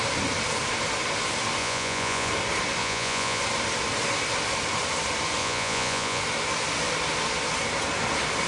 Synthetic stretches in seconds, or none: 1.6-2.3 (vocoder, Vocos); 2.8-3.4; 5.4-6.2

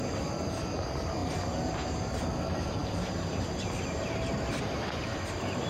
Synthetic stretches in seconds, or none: 1.2-2.2 (vocoder, BigVGAN v2); 2.8-4.6; 5.0-5.7

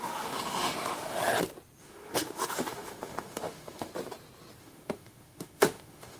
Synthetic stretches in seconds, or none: 0.0-1.2 (autoencoder, DAC-VAE); 1.8-3.9; 4.6-6.2

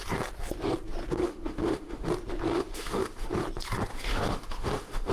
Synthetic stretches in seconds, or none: 1.2-2.1 (autoencoder, DAC-VAE); 2.5-3.3; 3.9-5.1

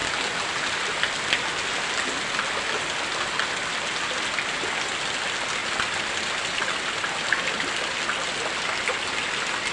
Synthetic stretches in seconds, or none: none

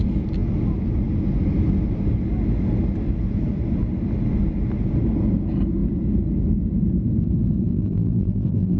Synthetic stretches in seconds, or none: 7.7-8.8 (vocoder, BigVGAN v2)

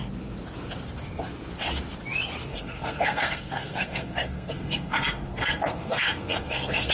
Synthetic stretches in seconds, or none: 2.5-6.9 (codec, SNAC)

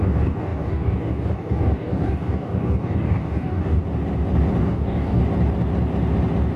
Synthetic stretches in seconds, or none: 0.0-3.8 (codec, DAC); 4.6-5.2